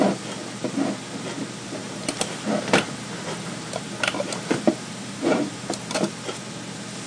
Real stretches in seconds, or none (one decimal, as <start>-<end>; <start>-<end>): 0.0-1.8; 6.1-7.1